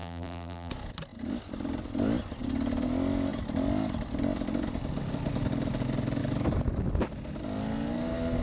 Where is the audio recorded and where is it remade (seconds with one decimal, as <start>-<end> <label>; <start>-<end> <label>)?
0.0-0.7 remade; 0.7-8.4 recorded

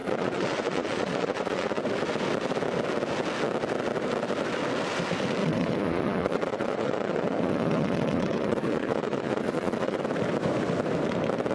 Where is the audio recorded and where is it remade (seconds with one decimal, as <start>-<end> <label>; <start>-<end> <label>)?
0.0-1.8 remade; 1.8-5.4 recorded; 5.4-10.0 remade; 10.0-11.5 recorded